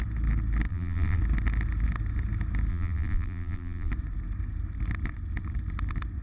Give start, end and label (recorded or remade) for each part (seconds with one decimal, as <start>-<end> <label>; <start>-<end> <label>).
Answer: 0.0-0.7 recorded; 0.7-1.2 remade; 1.2-2.7 recorded; 2.7-3.9 remade; 3.9-6.2 recorded